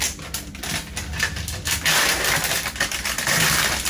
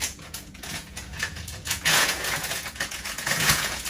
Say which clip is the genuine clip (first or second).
first